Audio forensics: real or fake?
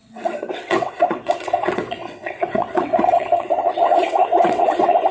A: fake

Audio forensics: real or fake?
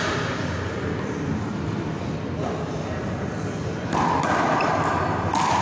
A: real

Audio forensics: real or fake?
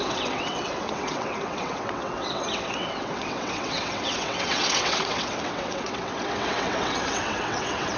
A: fake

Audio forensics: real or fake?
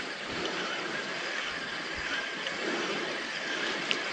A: real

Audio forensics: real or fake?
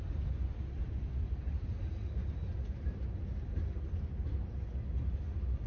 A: real